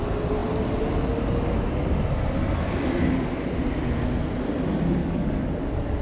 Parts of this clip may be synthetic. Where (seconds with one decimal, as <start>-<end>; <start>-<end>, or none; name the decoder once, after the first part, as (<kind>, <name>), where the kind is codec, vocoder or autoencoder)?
5.0-6.0 (codec, DAC)